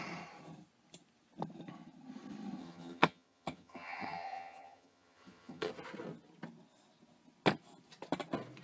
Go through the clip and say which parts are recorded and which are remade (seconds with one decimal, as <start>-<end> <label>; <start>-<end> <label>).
0.0-2.6 recorded; 2.6-5.7 remade; 5.7-8.6 recorded